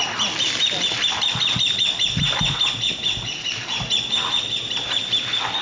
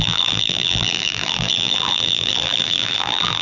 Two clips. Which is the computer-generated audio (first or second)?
second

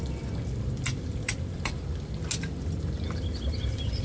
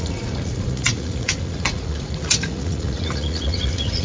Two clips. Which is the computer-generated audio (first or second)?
second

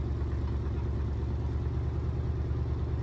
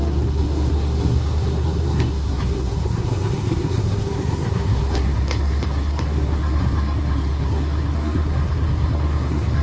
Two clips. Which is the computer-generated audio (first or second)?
second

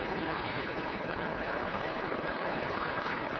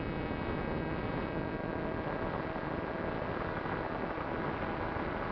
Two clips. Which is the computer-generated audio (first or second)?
first